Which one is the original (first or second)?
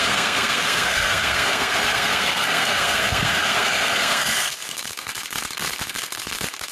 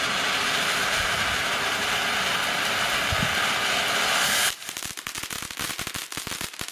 second